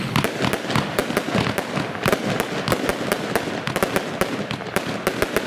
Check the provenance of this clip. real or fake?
real